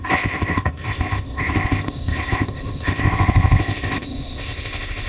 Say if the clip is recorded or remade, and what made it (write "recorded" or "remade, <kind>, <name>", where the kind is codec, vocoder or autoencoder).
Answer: remade, codec, ZipCodec